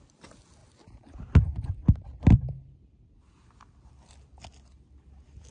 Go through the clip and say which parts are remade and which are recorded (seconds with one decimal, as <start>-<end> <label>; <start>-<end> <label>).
0.0-5.5 recorded